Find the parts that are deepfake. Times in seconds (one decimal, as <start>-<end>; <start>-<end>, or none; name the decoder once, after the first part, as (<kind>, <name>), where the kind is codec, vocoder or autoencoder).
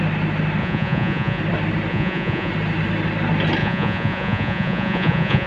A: 0.6-1.4 (vocoder, Vocos); 1.9-2.5; 3.6-5.5